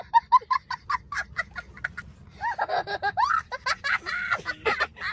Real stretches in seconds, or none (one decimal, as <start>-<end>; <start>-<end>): 0.0-5.1